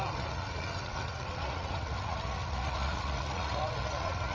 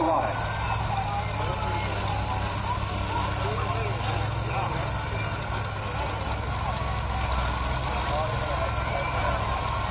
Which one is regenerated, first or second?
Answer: first